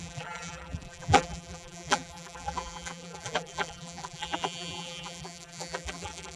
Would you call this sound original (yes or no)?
no